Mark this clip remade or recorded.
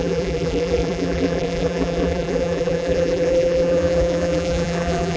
remade